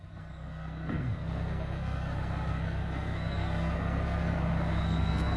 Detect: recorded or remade remade